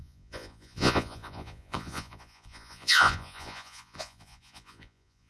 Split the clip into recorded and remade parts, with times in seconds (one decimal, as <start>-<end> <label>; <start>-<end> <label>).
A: 0.0-5.3 remade